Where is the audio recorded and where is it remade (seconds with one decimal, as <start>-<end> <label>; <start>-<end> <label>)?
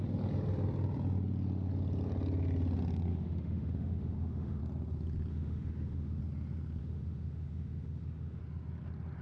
0.0-3.1 recorded; 3.1-4.6 remade; 4.6-5.3 recorded; 5.3-6.2 remade; 6.2-6.8 recorded; 6.8-8.4 remade; 8.4-9.2 recorded